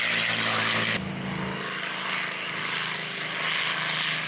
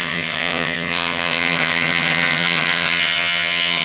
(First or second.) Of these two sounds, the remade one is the second